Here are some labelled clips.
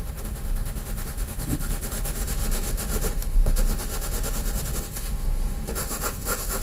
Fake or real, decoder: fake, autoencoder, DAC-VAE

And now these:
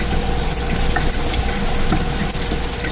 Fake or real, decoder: real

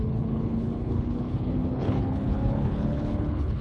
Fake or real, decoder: fake, codec, HILCodec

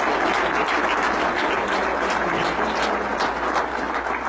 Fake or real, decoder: real